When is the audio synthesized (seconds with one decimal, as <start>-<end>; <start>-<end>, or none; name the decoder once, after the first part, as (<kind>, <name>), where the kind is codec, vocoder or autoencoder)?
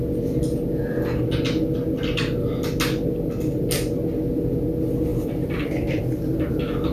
5.1-6.0 (vocoder, BigVGAN v2)